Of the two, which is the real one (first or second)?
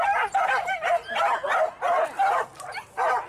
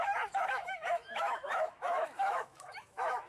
first